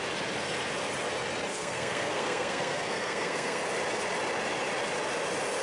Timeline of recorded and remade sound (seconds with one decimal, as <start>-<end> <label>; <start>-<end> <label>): 0.0-1.5 recorded; 1.5-3.6 remade; 3.6-5.6 recorded

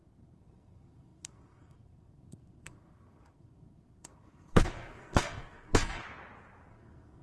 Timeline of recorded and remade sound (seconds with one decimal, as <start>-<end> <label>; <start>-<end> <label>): 0.0-6.0 remade; 6.0-6.7 recorded; 6.7-7.2 remade

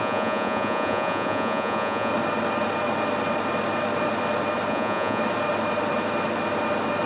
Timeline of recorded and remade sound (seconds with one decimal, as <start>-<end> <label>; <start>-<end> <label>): 0.0-2.1 remade; 2.1-4.7 recorded; 4.7-5.2 remade; 5.2-7.1 recorded

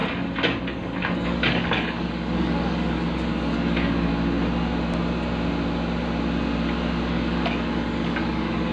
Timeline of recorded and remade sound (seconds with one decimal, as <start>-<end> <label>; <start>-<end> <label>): 0.0-0.6 recorded; 0.6-4.1 remade; 4.1-7.1 recorded; 7.1-8.7 remade